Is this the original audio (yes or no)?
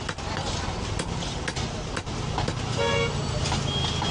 yes